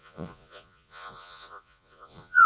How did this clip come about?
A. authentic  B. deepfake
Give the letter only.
B